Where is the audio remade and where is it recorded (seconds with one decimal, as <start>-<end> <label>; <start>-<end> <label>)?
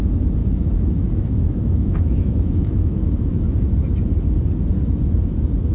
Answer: 0.0-0.4 recorded; 0.4-3.4 remade; 3.4-5.7 recorded